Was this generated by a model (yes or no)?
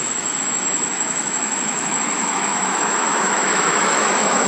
yes